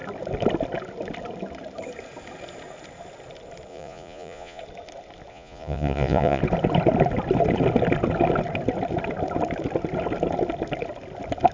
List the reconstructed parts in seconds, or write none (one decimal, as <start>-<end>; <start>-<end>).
3.7-4.6; 5.3-6.4